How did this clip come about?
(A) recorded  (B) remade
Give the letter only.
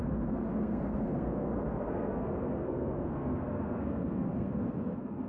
B